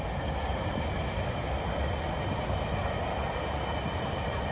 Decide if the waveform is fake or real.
real